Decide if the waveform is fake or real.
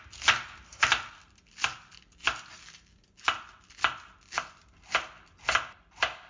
real